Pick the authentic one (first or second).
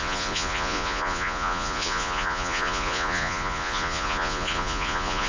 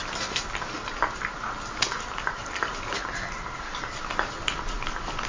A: second